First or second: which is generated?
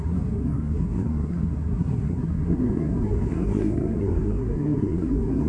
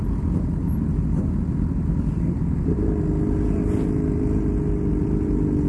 first